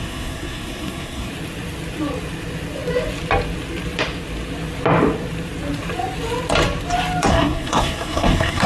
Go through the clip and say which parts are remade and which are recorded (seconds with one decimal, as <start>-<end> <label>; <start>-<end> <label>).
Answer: 0.0-1.3 remade; 1.3-7.3 recorded; 7.3-8.7 remade